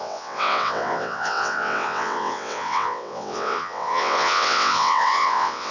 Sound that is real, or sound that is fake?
fake